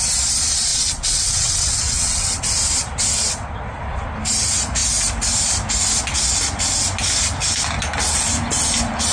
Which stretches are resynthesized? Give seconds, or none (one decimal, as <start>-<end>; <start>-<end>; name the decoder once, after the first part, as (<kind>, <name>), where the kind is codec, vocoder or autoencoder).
0.7-2.4 (vocoder, WaveNeXt)